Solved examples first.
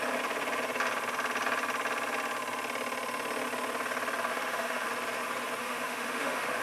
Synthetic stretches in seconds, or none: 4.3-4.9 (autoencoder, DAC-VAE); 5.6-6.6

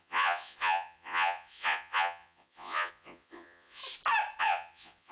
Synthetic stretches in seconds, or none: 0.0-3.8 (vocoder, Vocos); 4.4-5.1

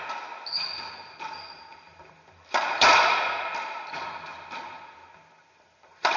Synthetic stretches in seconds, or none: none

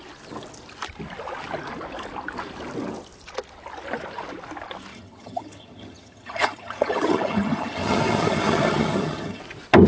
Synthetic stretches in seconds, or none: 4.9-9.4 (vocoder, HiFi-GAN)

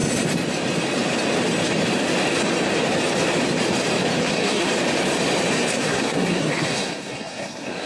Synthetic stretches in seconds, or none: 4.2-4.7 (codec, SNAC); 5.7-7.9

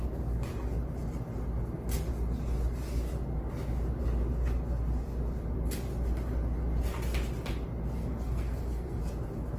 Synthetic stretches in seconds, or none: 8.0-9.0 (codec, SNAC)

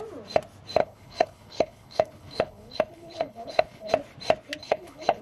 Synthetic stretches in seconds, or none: 0.8-3.9 (codec, HILCodec); 4.6-5.2

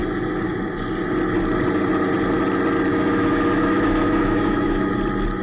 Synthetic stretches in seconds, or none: 2.9-4.9 (autoencoder, DAC-VAE)